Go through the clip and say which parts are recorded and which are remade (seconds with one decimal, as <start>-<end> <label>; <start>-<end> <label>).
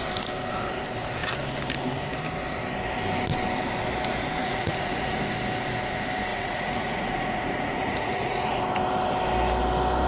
0.0-4.4 recorded; 4.4-5.2 remade; 5.2-6.3 recorded; 6.3-8.6 remade; 8.6-10.1 recorded